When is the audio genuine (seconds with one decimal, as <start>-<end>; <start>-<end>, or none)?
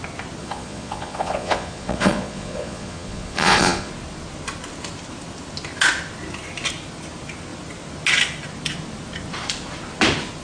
0.0-0.4; 3.9-10.4